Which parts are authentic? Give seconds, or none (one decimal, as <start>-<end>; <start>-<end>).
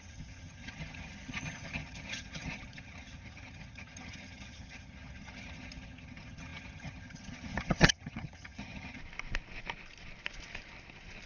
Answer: 9.0-11.3